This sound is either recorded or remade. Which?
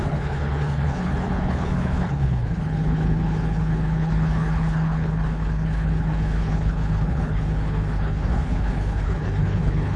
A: remade